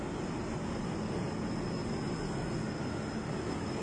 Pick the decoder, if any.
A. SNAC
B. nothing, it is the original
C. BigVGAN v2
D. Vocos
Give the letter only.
B